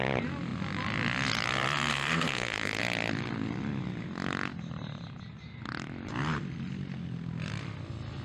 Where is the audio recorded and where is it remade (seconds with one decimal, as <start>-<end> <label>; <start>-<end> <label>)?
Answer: 0.0-1.9 recorded; 1.9-2.8 remade; 2.8-8.2 recorded